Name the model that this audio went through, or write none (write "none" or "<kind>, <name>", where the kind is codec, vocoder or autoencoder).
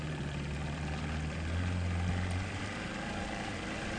none